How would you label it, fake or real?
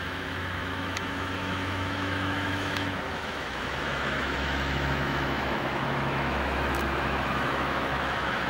fake